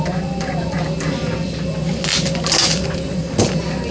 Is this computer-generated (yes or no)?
no